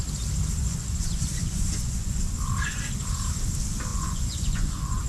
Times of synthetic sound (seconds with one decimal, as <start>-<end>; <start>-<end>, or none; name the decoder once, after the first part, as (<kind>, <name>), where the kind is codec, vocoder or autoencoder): 0.6-2.2 (vocoder, Vocos); 3.9-5.1